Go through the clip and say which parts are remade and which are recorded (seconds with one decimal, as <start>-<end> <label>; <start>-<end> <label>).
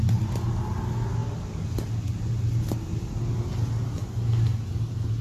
0.0-5.2 recorded